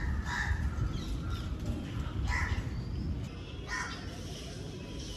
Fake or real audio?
real